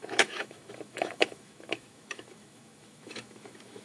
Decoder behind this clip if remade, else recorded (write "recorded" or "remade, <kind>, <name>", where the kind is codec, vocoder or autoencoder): remade, autoencoder, DAC-VAE